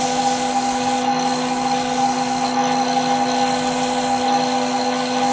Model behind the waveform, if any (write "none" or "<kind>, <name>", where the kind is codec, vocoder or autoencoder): none